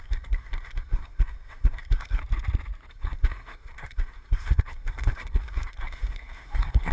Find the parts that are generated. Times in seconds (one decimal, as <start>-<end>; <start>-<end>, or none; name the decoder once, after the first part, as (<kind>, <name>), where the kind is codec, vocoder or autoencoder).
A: 0.0-2.2 (codec, SNAC); 2.9-6.9